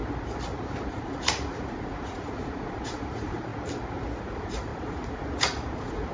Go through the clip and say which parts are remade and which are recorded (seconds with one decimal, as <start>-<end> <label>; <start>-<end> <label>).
0.0-0.8 recorded; 0.8-3.5 remade; 3.5-4.2 recorded; 4.2-6.1 remade